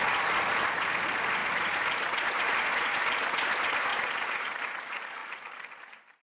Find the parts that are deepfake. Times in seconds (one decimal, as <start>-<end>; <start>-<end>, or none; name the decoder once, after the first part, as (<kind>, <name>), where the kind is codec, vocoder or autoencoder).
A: 1.4-2.2 (vocoder, BigVGAN v2); 3.9-4.6; 5.2-5.8